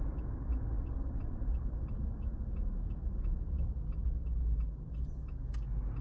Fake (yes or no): no